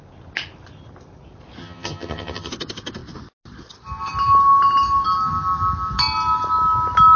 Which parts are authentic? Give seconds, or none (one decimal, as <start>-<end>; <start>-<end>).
0.0-1.6; 2.5-7.2